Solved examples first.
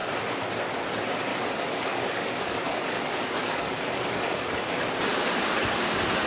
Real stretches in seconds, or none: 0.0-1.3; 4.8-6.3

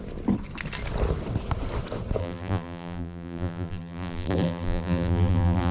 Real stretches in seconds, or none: 0.0-2.2

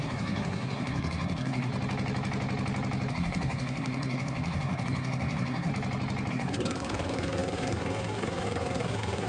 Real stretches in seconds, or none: 1.7-3.1; 5.7-6.3

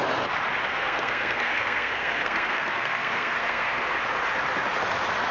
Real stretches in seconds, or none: 0.0-0.7; 3.9-5.3

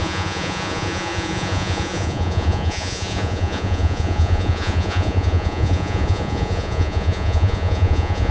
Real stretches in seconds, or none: none